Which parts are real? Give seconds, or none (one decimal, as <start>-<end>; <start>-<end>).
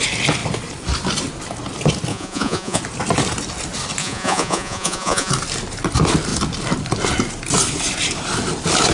0.0-2.1; 2.8-4.0; 5.3-8.9